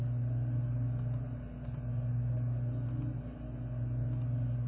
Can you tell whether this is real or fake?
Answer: real